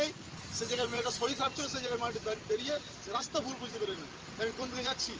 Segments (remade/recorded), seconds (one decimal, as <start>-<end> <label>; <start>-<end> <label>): 0.0-5.2 remade